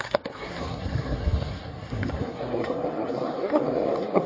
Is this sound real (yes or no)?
no